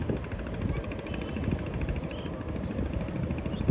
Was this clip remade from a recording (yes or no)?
no